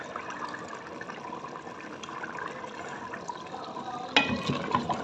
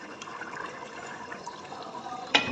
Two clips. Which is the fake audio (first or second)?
second